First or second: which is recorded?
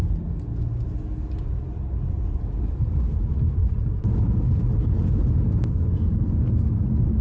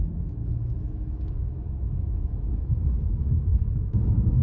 first